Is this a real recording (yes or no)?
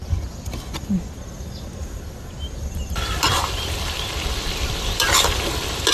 yes